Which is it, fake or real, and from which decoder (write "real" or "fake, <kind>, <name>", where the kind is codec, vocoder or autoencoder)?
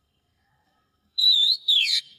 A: fake, codec, SNAC